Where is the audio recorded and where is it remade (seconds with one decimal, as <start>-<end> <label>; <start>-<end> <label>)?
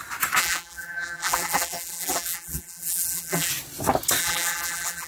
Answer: 0.0-0.4 recorded; 0.4-3.5 remade; 3.5-4.2 recorded; 4.2-5.1 remade